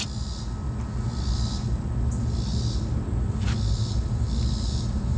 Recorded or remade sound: recorded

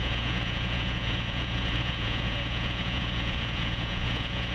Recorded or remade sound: remade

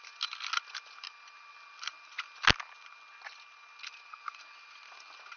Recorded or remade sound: recorded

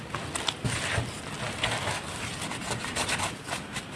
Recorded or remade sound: recorded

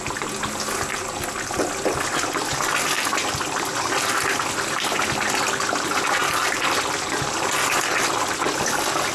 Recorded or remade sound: recorded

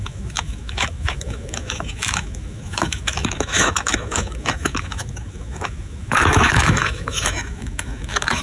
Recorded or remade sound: remade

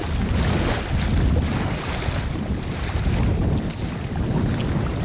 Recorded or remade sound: recorded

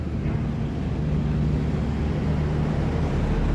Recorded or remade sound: recorded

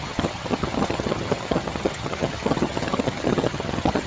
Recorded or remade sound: remade